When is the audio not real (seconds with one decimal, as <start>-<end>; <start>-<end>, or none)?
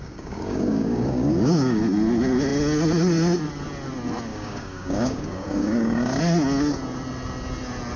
0.0-1.8; 4.3-6.2